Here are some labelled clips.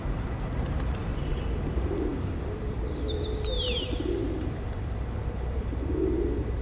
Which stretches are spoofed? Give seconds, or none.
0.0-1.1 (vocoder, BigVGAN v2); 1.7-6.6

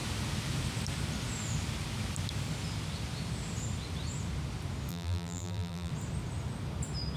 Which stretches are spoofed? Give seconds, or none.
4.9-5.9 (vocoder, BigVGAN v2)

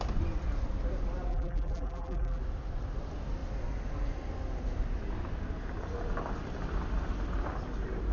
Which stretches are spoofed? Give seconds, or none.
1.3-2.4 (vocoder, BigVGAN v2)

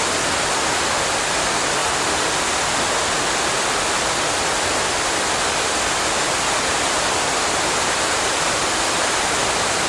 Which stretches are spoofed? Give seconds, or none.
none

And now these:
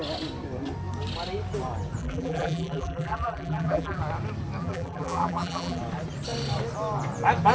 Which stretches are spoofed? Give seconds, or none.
2.0-4.0 (vocoder, BigVGAN v2); 4.6-5.8

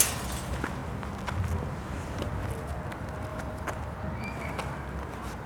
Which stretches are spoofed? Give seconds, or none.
3.3-4.0 (vocoder, BigVGAN v2)

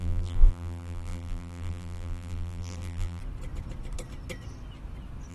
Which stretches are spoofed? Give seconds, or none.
0.0-3.2 (vocoder, BigVGAN v2)

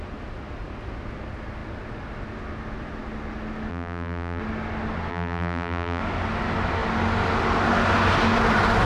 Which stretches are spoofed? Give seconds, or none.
3.7-4.4 (vocoder, BigVGAN v2); 5.1-6.0